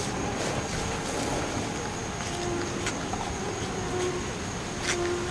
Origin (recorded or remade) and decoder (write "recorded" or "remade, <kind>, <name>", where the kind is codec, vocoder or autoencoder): recorded